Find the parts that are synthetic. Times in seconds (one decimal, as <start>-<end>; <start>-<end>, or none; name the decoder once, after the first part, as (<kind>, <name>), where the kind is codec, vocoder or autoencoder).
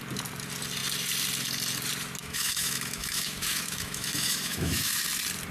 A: 2.2-5.0 (autoencoder, DAC-VAE)